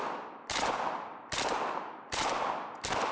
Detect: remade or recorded recorded